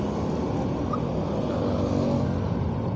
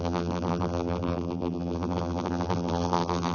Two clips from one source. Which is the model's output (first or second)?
second